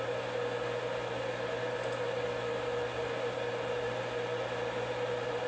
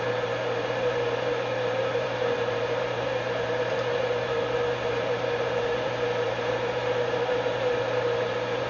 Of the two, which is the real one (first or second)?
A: first